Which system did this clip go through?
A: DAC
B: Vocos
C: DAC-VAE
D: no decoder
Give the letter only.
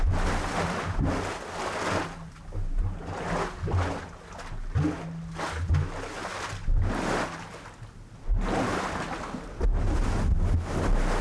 D